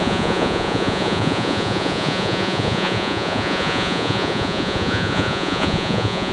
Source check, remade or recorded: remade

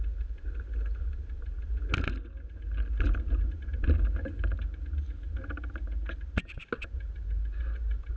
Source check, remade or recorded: recorded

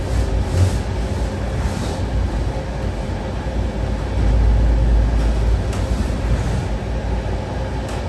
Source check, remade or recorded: recorded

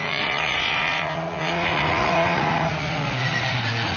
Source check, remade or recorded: remade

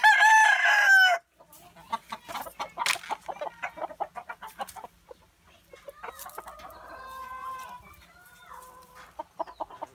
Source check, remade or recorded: recorded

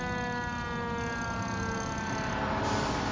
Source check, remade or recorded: recorded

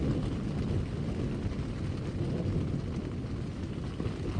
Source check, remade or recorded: recorded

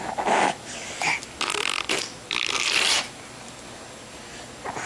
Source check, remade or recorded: recorded